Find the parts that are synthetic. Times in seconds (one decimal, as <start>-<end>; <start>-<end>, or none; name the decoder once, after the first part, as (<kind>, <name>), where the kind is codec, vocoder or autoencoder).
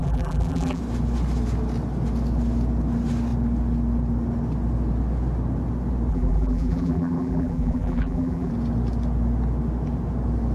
0.0-0.8 (vocoder, BigVGAN v2); 6.1-8.5